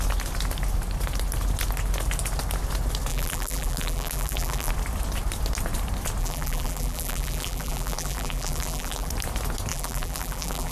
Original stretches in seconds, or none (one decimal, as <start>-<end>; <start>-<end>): 0.0-3.1; 4.7-6.2; 9.1-9.7